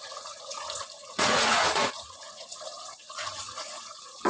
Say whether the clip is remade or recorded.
remade